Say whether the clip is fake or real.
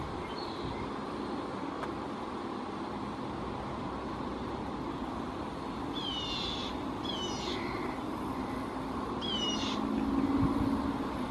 real